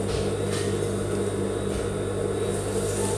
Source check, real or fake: real